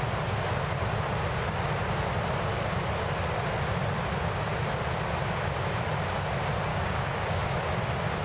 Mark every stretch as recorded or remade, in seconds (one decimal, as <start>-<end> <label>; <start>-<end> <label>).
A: 0.0-6.7 recorded; 6.7-7.6 remade; 7.6-8.2 recorded